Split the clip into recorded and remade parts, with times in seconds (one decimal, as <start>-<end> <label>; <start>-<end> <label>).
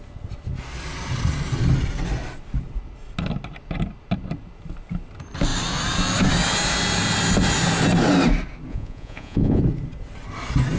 0.0-8.7 recorded; 8.7-9.6 remade; 9.6-10.8 recorded